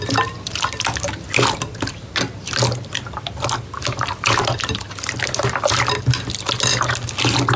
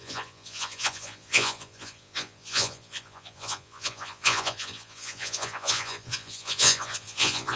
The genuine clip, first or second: first